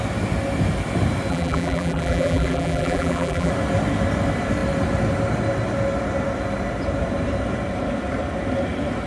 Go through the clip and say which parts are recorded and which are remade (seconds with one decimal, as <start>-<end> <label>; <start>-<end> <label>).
0.0-1.3 recorded; 1.3-3.5 remade; 3.5-9.1 recorded

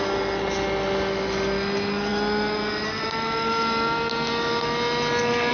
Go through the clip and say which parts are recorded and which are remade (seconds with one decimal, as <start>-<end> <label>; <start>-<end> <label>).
0.0-5.5 recorded

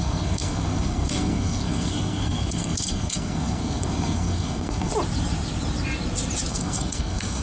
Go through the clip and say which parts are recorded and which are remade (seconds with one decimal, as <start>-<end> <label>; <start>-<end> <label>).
0.0-4.9 remade; 4.9-6.5 recorded; 6.5-7.4 remade

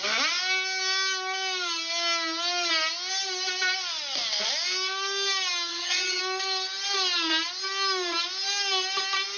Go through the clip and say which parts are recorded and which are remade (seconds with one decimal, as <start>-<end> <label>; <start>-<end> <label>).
0.0-5.7 recorded; 5.7-6.2 remade; 6.2-9.4 recorded

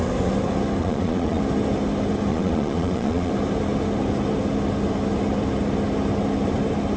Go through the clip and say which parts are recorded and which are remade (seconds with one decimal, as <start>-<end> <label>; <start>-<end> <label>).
0.0-0.8 recorded; 0.8-1.4 remade; 1.4-2.3 recorded; 2.3-3.3 remade; 3.3-7.0 recorded